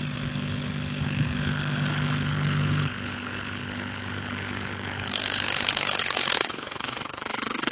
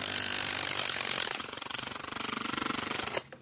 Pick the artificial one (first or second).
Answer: first